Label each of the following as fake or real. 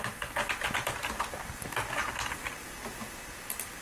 real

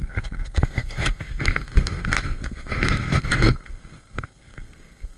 fake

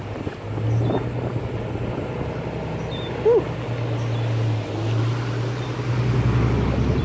real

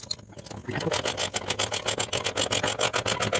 real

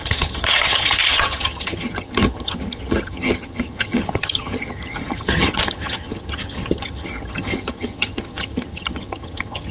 fake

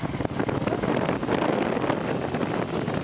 real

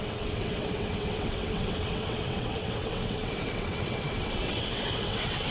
fake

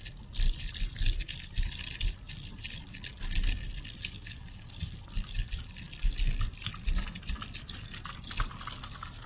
real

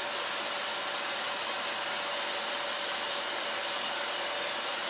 real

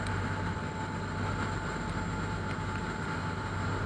real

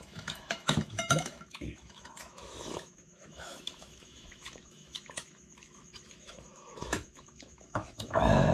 fake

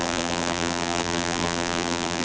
fake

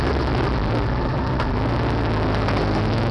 real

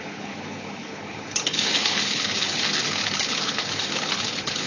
fake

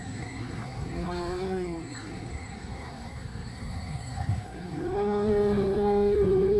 fake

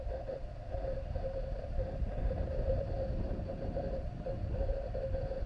fake